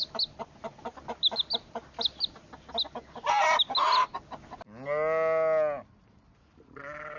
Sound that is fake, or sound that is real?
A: real